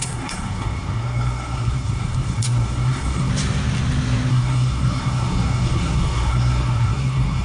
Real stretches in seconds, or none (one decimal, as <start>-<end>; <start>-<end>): 3.3-4.3